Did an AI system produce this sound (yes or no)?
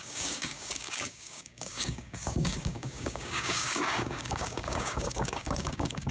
yes